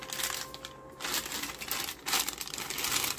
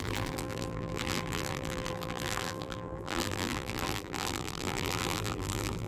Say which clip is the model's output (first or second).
second